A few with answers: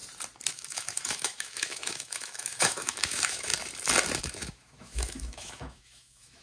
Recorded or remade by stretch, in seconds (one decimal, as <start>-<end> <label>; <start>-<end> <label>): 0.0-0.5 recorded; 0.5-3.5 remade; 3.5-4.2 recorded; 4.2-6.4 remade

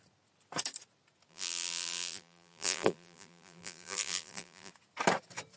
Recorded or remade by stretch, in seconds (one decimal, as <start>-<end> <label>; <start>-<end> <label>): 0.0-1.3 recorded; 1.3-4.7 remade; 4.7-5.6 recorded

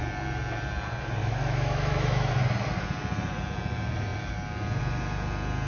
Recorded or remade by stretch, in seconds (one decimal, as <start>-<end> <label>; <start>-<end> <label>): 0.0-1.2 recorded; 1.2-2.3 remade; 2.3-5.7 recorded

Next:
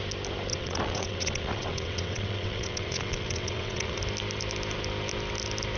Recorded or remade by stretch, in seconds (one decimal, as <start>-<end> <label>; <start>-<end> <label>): 0.0-0.5 recorded; 0.5-4.0 remade; 4.0-5.8 recorded